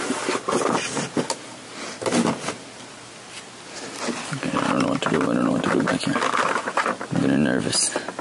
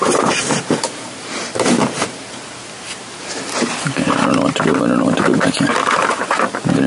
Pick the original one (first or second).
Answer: first